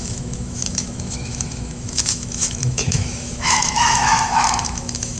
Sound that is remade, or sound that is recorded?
remade